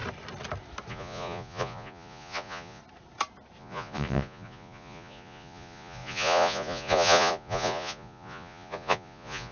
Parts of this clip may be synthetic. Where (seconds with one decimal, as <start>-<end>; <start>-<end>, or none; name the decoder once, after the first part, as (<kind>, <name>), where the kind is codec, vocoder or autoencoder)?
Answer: 0.9-2.8 (vocoder, Vocos); 3.6-9.5